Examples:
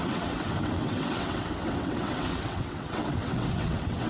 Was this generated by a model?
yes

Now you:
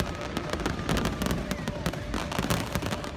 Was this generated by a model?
no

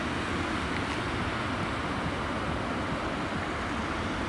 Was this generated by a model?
no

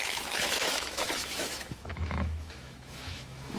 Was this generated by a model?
yes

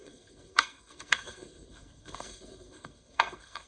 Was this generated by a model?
yes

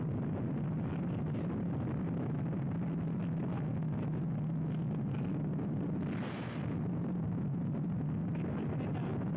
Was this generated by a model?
no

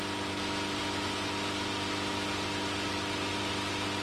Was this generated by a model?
no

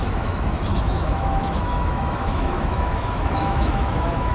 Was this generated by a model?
yes